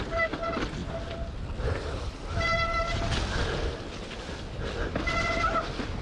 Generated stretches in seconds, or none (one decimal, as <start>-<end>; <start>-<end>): none